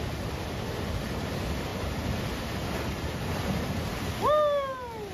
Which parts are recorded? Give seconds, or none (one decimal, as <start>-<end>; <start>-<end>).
0.0-5.1